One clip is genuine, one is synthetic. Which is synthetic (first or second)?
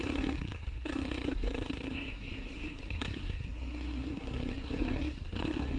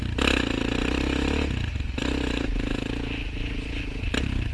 first